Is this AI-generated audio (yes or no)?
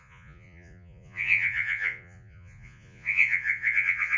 yes